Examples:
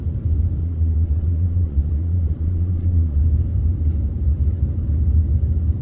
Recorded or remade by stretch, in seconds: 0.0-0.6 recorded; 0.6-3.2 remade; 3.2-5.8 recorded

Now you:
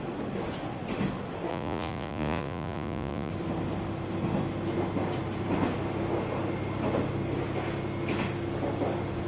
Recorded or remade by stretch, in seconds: 0.0-1.5 recorded; 1.5-3.3 remade; 3.3-9.3 recorded

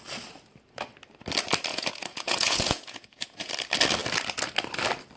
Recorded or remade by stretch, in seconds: 0.0-1.7 recorded; 1.7-3.5 remade; 3.5-5.2 recorded

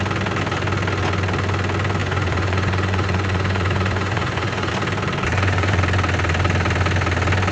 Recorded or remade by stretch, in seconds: 0.0-2.0 recorded; 2.0-4.7 remade; 4.7-5.3 recorded; 5.3-5.8 remade; 5.8-7.5 recorded

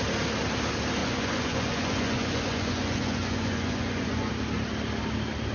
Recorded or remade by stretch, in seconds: 0.0-1.0 recorded; 1.0-4.3 remade; 4.3-5.5 recorded

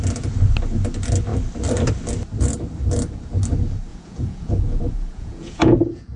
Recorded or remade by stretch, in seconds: 0.0-3.9 recorded; 3.9-6.2 remade

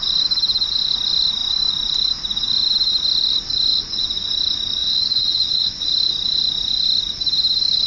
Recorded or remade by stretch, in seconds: 0.0-3.7 recorded; 3.7-4.3 remade; 4.3-4.8 recorded; 4.8-5.9 remade; 5.9-7.9 recorded

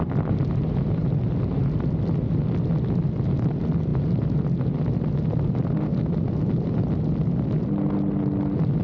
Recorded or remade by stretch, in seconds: 0.0-8.8 recorded